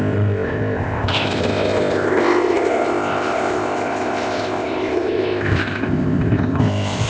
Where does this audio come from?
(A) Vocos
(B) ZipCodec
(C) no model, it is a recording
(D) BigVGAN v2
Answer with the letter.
B